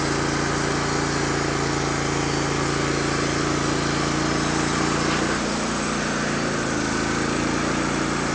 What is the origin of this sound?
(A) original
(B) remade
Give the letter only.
A